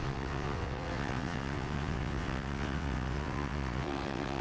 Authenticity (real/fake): fake